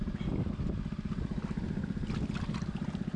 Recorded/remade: recorded